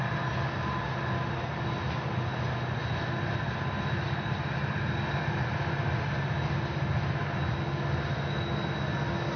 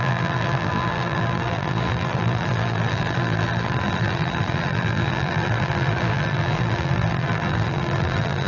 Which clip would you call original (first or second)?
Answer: first